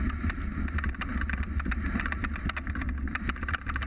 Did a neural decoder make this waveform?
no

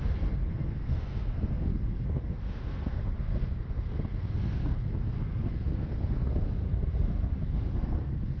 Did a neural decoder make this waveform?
yes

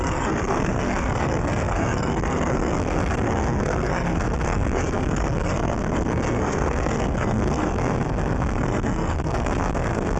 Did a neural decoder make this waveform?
yes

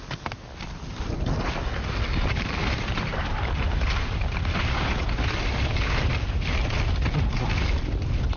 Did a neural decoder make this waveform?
no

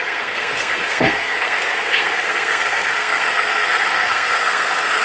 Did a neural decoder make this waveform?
yes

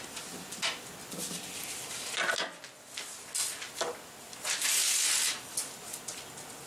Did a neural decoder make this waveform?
no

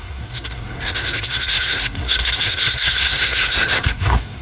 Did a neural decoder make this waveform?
yes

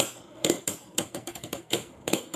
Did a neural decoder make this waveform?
yes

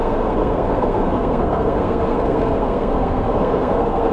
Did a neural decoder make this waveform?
yes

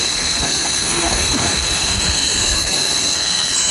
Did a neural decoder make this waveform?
yes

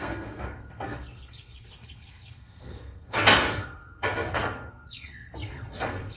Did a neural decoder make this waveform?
yes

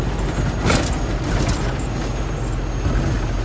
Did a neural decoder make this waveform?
no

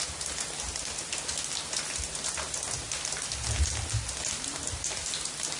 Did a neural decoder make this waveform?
no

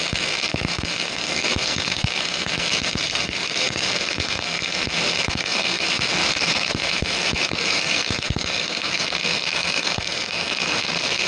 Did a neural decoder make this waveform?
yes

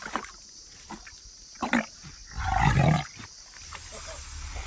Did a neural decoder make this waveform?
no